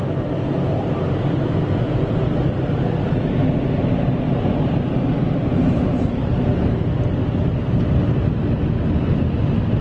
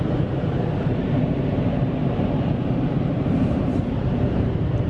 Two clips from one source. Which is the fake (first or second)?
second